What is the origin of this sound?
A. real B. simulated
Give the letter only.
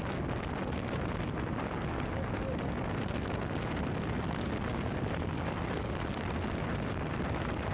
A